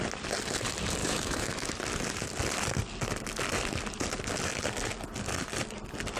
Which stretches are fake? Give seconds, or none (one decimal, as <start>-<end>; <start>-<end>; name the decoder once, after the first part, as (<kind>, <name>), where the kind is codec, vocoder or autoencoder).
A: 1.0-1.8 (autoencoder, DAC-VAE)